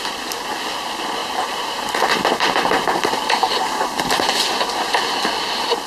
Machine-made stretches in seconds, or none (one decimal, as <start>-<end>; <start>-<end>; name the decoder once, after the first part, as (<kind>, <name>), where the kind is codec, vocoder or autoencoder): 1.2-4.4 (vocoder, BigVGAN v2)